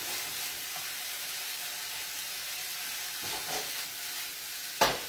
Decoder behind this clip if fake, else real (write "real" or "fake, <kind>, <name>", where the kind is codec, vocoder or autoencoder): real